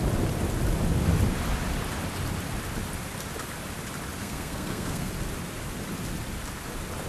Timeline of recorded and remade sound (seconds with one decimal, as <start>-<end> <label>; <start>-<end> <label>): 0.0-4.2 recorded; 4.2-5.1 remade; 5.1-7.1 recorded